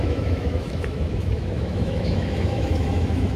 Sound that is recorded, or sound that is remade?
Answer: remade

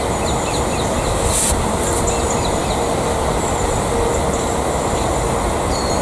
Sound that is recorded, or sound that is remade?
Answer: recorded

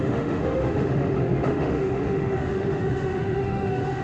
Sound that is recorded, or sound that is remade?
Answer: remade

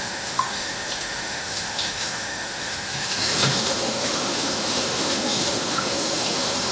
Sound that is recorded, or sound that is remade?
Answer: remade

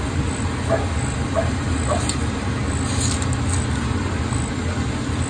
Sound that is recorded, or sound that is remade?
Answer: recorded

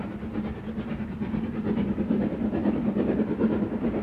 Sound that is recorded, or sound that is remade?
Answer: recorded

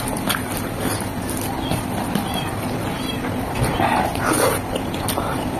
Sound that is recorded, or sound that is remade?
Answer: recorded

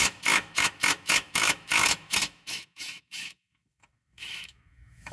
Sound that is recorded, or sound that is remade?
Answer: remade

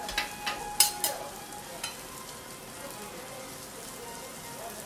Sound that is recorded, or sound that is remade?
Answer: recorded